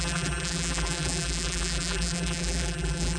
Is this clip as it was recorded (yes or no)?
no